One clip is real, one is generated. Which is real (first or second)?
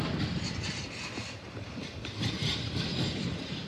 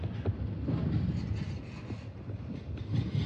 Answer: second